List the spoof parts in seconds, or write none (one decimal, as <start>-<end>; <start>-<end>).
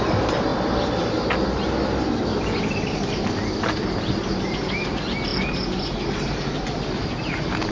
none